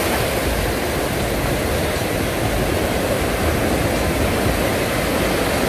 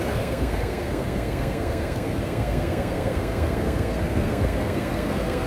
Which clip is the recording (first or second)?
first